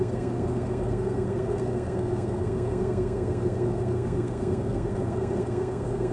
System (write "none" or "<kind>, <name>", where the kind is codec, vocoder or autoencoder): codec, SNAC